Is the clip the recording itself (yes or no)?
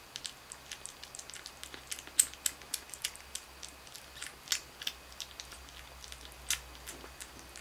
yes